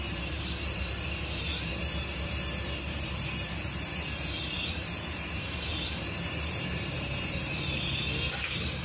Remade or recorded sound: remade